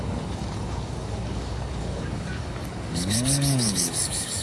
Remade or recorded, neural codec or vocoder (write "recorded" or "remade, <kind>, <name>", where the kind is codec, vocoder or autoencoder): remade, codec, DAC